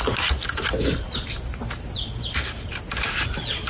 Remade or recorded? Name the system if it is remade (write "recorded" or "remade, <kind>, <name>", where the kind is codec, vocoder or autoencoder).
recorded